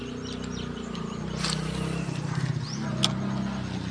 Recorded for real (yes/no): yes